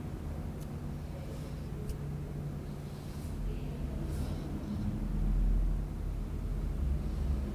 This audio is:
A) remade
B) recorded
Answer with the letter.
B